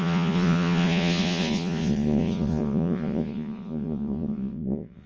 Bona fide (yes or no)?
no